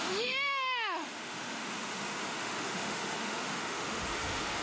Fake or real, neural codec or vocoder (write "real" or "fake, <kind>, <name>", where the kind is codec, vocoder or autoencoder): fake, autoencoder, DAC-VAE